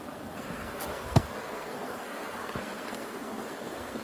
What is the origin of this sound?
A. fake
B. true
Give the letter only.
A